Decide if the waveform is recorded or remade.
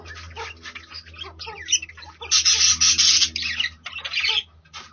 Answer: recorded